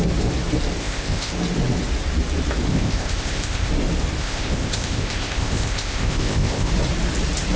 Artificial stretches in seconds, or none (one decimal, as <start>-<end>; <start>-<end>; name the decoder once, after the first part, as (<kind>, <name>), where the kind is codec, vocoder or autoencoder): 0.8-1.3 (codec, ZipCodec); 2.7-3.7; 4.2-6.7